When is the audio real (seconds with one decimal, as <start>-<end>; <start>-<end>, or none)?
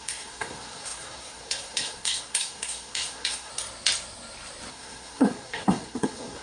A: 3.5-4.7